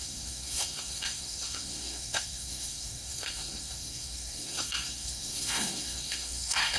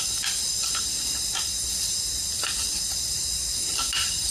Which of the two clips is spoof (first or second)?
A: first